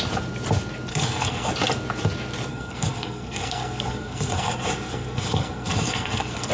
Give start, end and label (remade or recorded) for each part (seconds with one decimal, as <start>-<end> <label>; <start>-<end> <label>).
0.0-0.9 recorded; 0.9-1.5 remade; 1.5-2.5 recorded; 2.5-6.5 remade